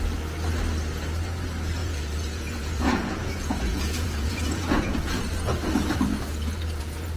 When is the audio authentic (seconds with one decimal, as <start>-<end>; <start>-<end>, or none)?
0.0-1.8; 5.2-7.2